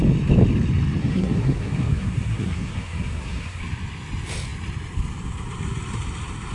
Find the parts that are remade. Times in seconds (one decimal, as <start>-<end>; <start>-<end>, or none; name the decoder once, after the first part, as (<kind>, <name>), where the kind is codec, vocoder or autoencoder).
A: 1.0-3.6 (codec, SNAC)